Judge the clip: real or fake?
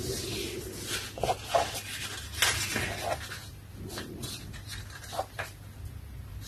real